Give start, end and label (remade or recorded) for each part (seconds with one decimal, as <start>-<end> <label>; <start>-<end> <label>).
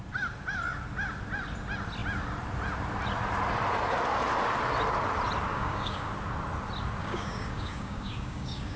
0.0-5.5 recorded; 5.5-6.1 remade; 6.1-7.0 recorded; 7.0-8.8 remade